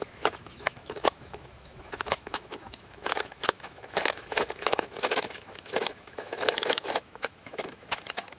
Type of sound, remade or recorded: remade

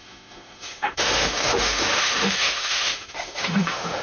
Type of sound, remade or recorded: remade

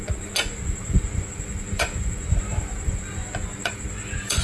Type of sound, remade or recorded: remade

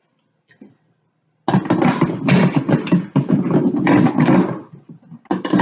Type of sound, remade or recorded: recorded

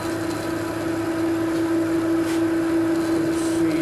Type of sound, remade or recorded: recorded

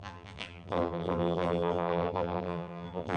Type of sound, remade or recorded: remade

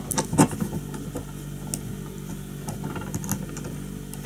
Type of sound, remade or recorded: recorded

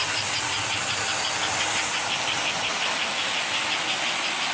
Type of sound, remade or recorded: recorded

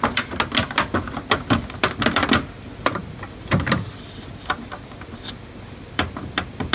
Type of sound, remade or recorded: recorded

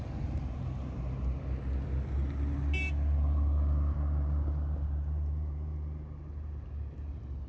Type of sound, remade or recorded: recorded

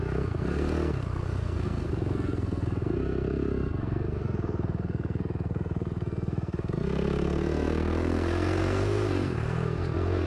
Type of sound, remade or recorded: remade